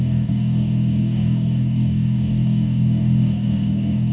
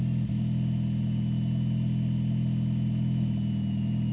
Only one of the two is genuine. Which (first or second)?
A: second